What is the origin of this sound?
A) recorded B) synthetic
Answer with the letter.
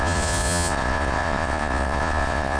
B